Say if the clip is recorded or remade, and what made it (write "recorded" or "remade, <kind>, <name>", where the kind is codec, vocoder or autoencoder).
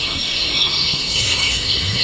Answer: remade, codec, SNAC